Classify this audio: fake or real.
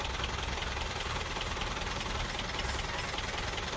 real